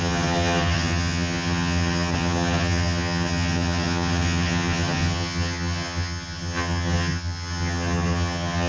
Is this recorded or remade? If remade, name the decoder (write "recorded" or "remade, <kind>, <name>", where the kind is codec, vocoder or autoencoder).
remade, vocoder, HiFi-GAN